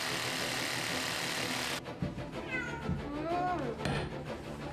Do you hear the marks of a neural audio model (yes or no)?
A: no